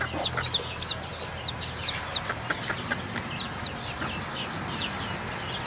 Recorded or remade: recorded